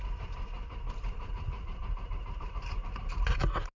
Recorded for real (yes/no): no